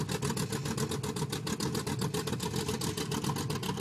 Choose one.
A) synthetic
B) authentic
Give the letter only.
B